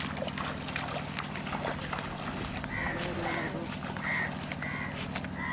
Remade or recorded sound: recorded